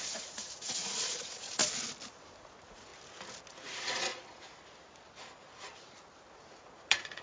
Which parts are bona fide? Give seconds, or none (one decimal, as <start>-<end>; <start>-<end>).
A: 1.6-2.4; 2.9-3.5; 4.1-6.3